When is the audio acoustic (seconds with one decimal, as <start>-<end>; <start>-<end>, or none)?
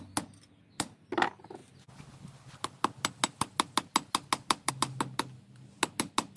0.0-6.4